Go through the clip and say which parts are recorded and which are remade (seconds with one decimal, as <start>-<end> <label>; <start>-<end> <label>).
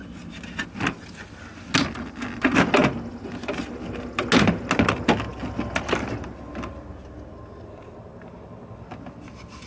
0.0-9.7 recorded